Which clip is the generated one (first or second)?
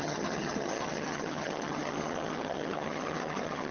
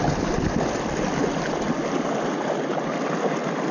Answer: first